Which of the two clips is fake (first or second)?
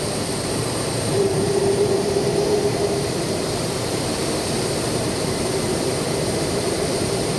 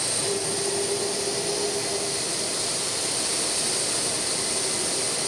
first